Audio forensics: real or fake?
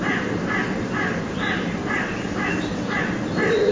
real